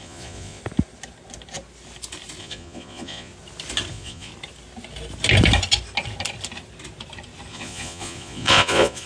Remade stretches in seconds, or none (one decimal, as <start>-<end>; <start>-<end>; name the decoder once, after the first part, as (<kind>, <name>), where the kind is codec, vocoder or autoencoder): 0.0-0.6 (vocoder, Vocos); 2.4-3.3; 3.9-4.3; 7.5-9.1